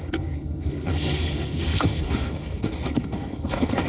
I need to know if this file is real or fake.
fake